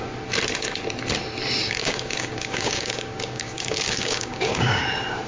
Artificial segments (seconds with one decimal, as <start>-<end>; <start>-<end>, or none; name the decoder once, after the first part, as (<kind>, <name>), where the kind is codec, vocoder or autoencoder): 1.6-4.8 (codec, DAC)